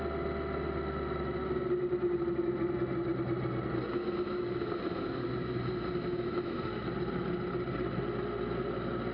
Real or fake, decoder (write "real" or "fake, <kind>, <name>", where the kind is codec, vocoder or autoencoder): real